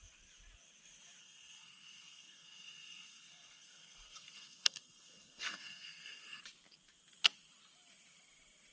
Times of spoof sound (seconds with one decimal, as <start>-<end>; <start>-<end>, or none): 1.2-6.4